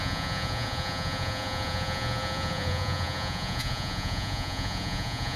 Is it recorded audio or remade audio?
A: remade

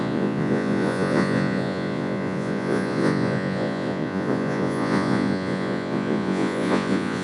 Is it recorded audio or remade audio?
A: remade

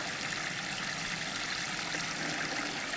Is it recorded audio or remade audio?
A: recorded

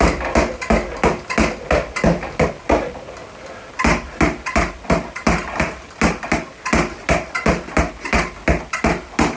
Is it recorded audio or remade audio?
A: recorded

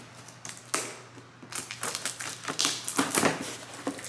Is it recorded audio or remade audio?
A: recorded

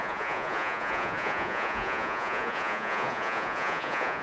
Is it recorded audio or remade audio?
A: remade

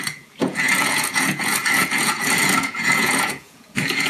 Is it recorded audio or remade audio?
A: remade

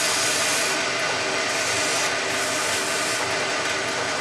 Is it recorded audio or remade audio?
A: recorded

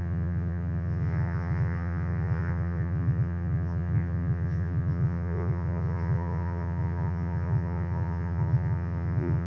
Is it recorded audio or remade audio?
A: remade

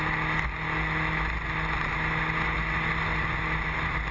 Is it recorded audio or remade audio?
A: recorded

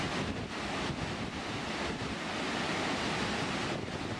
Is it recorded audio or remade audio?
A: recorded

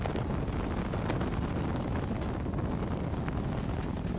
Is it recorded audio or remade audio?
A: recorded